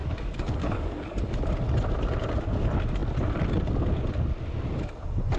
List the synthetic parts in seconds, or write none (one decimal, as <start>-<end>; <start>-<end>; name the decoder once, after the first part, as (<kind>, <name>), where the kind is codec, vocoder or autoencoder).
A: 0.0-1.4 (codec, DAC)